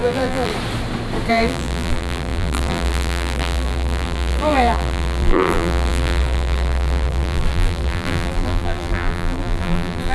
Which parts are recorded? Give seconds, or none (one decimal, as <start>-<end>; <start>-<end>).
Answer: 0.5-1.3